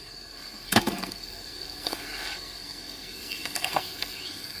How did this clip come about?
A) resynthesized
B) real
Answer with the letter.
A